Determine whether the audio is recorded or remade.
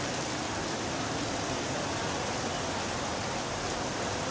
recorded